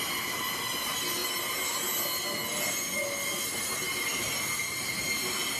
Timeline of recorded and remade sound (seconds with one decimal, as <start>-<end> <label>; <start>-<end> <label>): 0.0-5.6 recorded